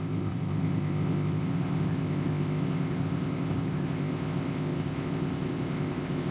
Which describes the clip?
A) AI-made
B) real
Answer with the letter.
A